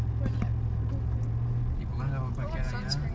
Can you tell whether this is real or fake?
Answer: real